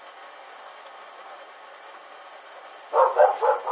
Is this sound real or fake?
real